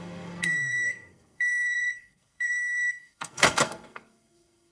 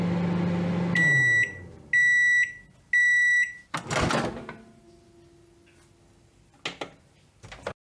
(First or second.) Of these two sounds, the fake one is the first